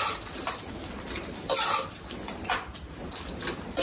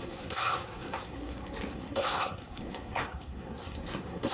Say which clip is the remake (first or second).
second